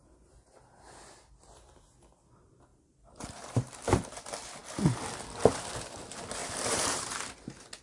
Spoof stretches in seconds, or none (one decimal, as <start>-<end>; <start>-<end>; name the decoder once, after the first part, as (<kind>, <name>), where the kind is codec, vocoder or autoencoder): 2.7-3.7 (vocoder, BigVGAN v2); 6.4-7.0